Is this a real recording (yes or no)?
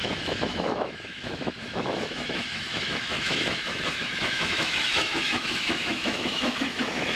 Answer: no